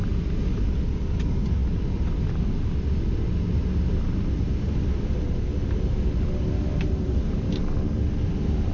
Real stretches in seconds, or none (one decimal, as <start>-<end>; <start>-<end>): 0.0-6.7; 7.6-8.7